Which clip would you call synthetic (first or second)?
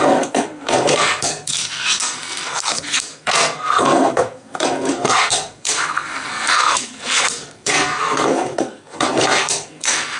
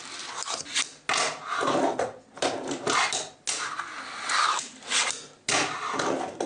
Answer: first